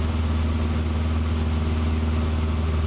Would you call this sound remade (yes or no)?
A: no